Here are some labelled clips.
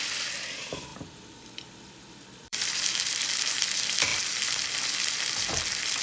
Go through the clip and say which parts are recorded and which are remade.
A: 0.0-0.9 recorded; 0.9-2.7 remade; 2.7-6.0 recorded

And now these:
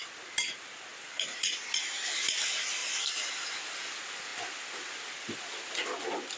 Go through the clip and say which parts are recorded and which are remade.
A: 0.0-0.9 recorded; 0.9-1.6 remade; 1.6-2.8 recorded; 2.8-3.3 remade; 3.3-6.4 recorded

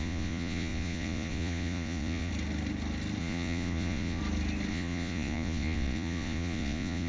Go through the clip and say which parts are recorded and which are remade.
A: 0.0-2.3 remade; 2.3-3.2 recorded; 3.2-4.2 remade; 4.2-4.7 recorded; 4.7-7.1 remade